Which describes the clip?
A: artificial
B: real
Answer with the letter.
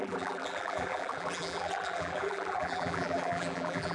A